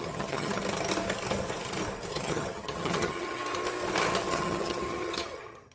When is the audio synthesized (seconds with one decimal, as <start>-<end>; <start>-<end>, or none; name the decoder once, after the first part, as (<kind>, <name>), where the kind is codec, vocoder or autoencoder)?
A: 0.0-0.6 (vocoder, HiFi-GAN); 2.1-3.4; 4.3-5.7